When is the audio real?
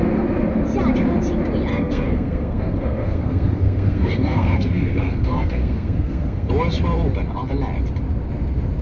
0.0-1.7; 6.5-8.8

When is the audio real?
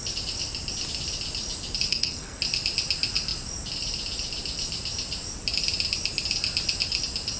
0.0-1.9; 2.4-7.4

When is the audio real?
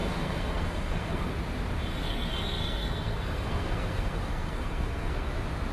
1.3-1.9; 5.3-5.7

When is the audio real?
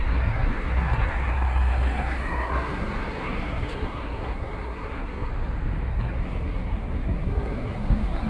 5.3-5.9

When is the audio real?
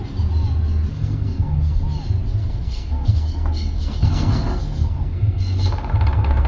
0.0-0.9; 1.8-2.4